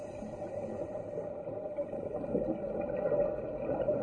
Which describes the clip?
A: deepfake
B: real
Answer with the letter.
B